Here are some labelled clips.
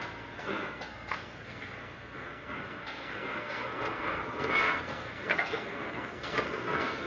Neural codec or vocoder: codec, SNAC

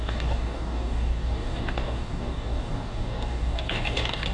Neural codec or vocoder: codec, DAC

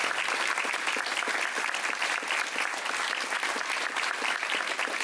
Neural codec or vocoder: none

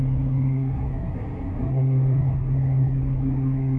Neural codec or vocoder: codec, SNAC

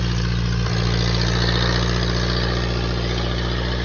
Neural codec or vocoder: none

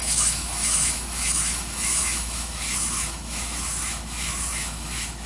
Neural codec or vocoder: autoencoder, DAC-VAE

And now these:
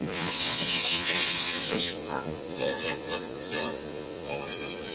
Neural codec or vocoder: vocoder, Vocos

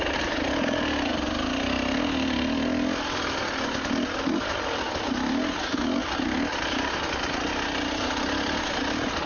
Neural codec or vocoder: none